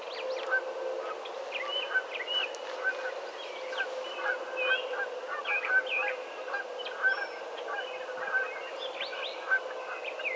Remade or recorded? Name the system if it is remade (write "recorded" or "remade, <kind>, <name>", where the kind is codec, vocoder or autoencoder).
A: recorded